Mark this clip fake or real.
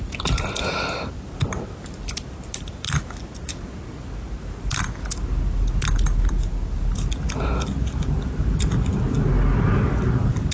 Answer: real